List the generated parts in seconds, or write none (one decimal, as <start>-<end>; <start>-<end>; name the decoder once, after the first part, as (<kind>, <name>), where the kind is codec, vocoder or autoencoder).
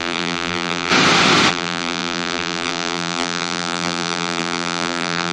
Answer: 0.0-0.9 (vocoder, BigVGAN v2); 1.5-5.3